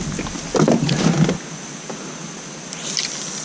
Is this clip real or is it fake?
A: real